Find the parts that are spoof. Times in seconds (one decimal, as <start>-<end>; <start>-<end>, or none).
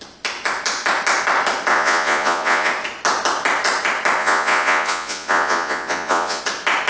1.7-2.7; 4.2-6.4